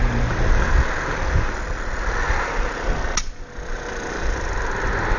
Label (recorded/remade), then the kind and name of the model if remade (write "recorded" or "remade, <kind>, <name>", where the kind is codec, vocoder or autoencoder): recorded